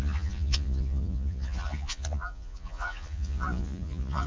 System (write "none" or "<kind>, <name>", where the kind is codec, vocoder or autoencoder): vocoder, Vocos